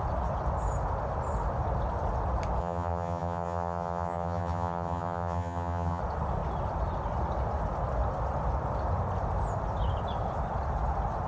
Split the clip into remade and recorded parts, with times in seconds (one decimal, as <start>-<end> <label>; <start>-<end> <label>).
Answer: 0.0-2.6 recorded; 2.6-6.0 remade; 6.0-11.3 recorded